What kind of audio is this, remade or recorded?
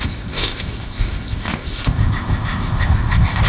remade